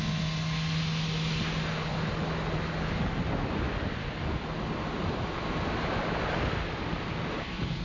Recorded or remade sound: recorded